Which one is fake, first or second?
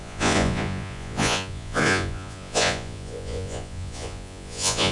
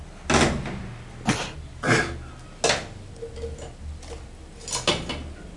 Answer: first